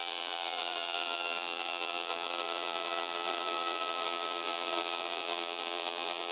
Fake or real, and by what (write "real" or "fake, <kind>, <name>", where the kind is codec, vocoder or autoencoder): fake, vocoder, BigVGAN v2